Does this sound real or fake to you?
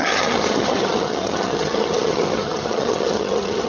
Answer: fake